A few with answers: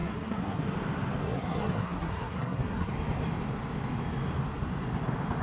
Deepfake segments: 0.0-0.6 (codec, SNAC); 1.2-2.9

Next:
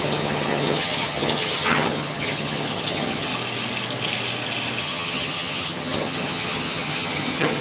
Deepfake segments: 0.0-3.3 (vocoder, HiFi-GAN); 4.8-7.6

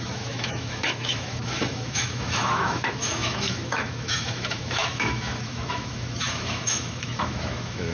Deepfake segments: 0.0-7.9 (autoencoder, DAC-VAE)

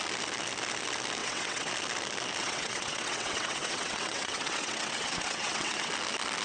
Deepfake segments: 1.2-1.7 (vocoder, WaveNeXt); 2.4-5.9

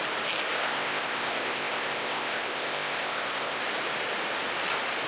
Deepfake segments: 0.5-3.6 (codec, ZipCodec)

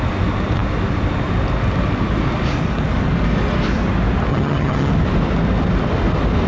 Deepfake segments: 4.3-4.9 (vocoder, HiFi-GAN)

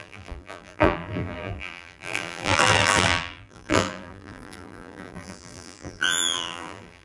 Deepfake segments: 0.0-7.0 (vocoder, BigVGAN v2)

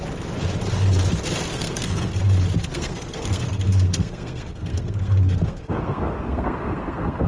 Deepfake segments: 1.5-2.1 (codec, SNAC); 2.7-7.3